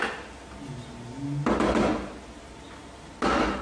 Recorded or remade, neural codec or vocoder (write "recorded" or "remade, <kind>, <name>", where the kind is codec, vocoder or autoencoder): recorded